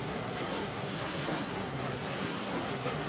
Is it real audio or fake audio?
fake